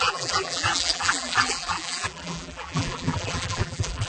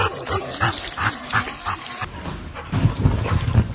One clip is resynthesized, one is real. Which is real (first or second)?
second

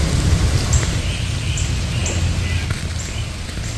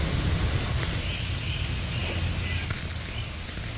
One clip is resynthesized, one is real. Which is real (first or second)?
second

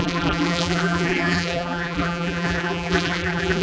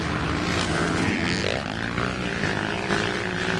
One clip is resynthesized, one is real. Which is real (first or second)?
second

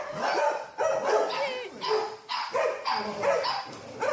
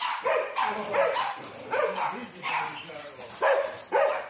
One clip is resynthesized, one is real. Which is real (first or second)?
first